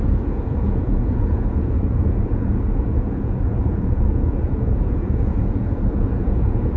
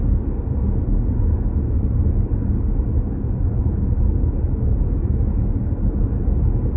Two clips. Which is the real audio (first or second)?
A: second